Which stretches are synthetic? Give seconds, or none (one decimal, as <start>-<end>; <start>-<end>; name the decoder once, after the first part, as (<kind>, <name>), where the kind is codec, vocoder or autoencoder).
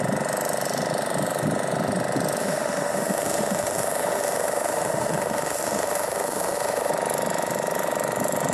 2.4-6.9 (autoencoder, DAC-VAE)